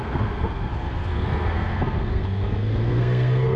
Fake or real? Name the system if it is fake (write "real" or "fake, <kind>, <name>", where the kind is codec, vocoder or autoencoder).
fake, codec, SNAC